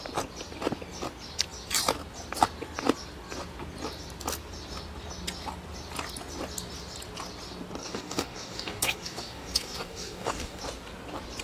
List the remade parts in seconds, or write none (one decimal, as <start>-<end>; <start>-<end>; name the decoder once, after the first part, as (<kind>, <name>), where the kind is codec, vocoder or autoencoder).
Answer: 7.8-10.6 (codec, DAC)